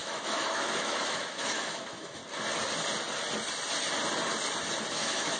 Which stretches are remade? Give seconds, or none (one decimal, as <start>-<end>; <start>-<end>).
0.0-2.2; 4.9-5.4